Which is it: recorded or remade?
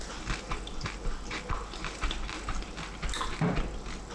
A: recorded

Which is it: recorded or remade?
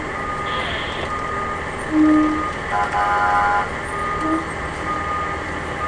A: recorded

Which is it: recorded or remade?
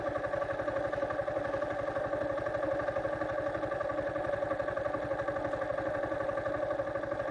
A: recorded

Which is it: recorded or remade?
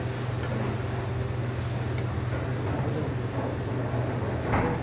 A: recorded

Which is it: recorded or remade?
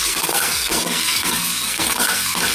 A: remade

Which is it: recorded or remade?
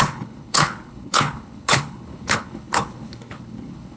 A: remade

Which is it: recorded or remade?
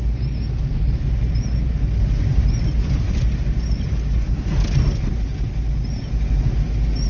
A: recorded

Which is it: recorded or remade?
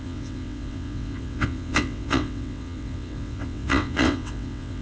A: remade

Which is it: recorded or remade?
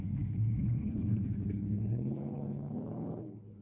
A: remade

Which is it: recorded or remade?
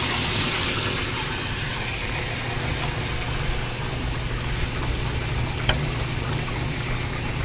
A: recorded